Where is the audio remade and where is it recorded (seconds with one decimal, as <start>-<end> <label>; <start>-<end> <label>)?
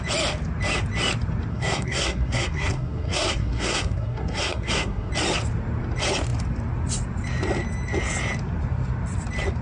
0.0-1.5 recorded; 1.5-5.1 remade; 5.1-9.6 recorded